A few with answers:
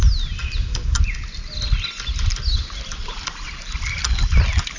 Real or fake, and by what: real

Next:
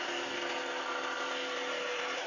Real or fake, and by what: real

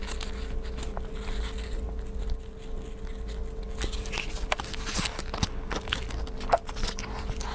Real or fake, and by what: real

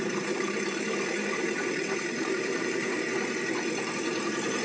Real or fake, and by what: fake, vocoder, BigVGAN v2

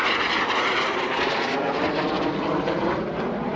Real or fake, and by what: real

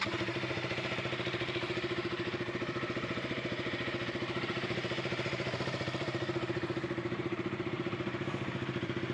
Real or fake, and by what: fake, vocoder, BigVGAN v2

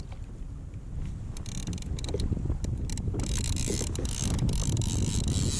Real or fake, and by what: real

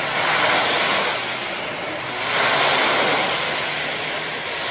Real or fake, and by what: real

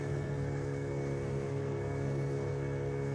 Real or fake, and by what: fake, codec, SNAC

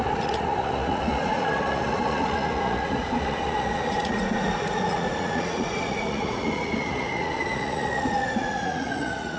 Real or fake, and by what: fake, vocoder, Vocos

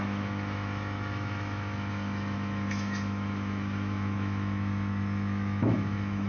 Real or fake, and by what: fake, autoencoder, DAC-VAE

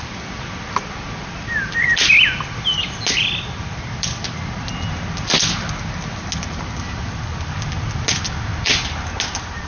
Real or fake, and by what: real